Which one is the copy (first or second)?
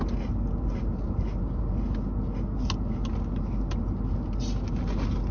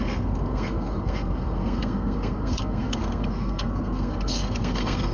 second